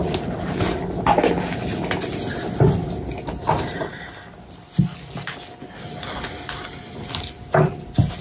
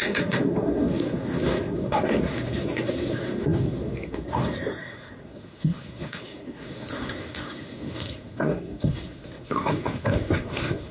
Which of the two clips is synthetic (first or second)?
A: second